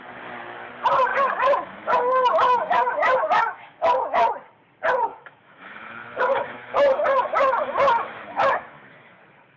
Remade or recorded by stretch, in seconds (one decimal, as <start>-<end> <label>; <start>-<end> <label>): 0.0-1.1 recorded; 1.1-4.3 remade; 4.3-5.1 recorded; 5.1-9.2 remade; 9.2-9.6 recorded